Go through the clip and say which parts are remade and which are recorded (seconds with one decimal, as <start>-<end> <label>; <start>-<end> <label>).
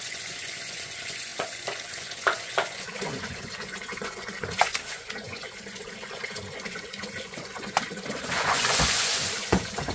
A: 0.0-9.9 remade